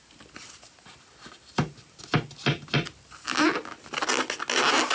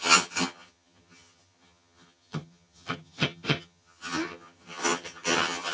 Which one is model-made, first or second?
second